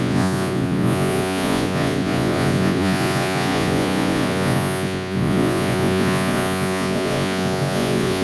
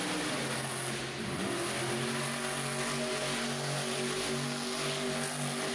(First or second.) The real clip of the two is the second